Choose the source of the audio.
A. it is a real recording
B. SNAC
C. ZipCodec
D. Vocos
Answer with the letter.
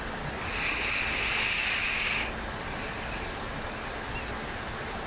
A